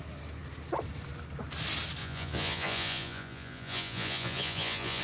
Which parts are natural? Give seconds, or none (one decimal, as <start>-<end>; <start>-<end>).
0.0-2.0